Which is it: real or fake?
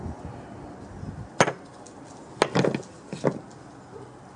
real